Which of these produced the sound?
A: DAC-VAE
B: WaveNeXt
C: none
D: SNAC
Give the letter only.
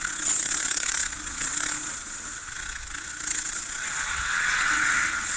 B